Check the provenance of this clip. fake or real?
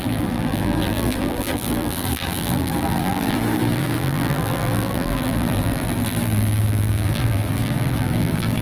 fake